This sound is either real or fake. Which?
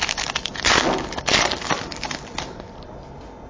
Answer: real